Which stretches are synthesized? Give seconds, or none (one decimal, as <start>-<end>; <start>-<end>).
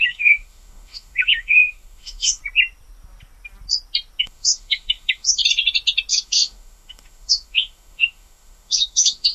0.0-2.4; 4.2-5.4; 6.1-9.3